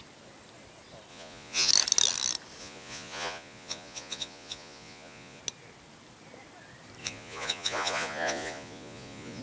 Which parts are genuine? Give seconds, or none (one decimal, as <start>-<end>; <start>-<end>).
0.0-1.1; 1.7-2.6; 5.4-7.0